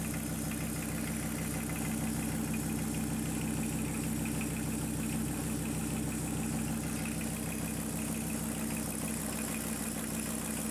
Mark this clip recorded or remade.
recorded